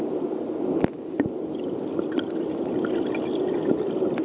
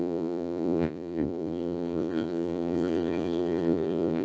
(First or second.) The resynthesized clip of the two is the second